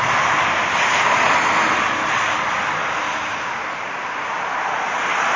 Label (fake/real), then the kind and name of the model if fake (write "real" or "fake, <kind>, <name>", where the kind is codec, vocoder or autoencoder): real